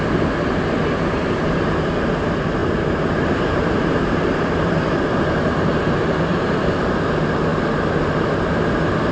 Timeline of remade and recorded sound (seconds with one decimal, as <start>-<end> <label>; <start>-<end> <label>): 0.0-2.6 recorded; 2.6-6.6 remade; 6.6-9.1 recorded